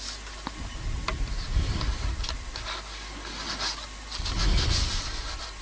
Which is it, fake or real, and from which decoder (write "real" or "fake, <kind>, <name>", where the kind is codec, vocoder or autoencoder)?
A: real